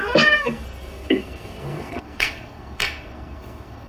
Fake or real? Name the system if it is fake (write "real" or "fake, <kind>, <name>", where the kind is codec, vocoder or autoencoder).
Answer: fake, codec, SNAC